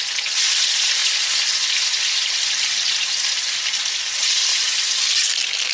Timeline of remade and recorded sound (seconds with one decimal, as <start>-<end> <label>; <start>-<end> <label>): 0.0-5.7 recorded